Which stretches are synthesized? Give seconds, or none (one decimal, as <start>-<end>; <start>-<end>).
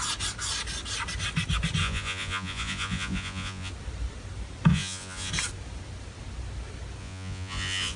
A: 1.8-3.7; 4.7-5.3; 7.0-8.0